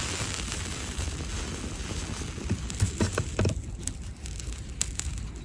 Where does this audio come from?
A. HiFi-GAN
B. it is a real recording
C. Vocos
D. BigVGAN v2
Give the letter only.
B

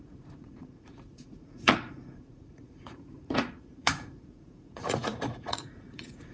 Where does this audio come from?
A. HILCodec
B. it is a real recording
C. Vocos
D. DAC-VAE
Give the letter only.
C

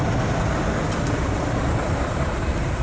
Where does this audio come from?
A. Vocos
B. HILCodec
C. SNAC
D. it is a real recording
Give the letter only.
D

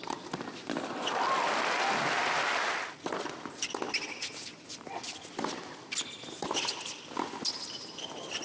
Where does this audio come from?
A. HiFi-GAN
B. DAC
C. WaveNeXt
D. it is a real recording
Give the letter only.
D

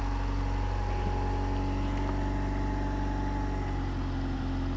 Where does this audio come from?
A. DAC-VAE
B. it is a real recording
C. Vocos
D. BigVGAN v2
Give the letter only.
B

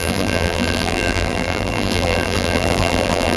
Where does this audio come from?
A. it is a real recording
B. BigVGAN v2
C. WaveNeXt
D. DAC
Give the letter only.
B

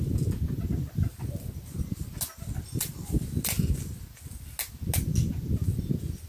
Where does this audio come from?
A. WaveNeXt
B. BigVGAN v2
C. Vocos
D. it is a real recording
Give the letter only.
D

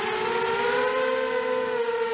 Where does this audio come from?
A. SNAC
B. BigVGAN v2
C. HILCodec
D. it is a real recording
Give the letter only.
D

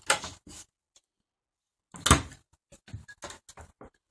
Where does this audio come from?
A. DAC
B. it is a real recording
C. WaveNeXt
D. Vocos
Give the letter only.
B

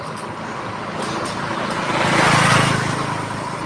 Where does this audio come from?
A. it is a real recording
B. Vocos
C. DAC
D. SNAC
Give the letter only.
A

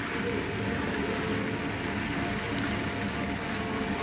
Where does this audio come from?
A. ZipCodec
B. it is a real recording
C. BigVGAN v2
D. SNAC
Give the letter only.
B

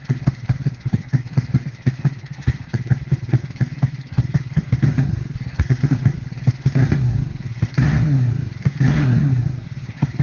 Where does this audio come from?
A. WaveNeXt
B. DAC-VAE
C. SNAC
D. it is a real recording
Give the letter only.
C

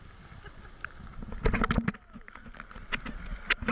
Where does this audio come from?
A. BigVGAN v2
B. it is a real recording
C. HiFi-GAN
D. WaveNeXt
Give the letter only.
B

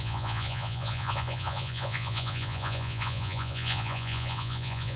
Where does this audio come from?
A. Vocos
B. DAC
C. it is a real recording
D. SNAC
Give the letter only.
A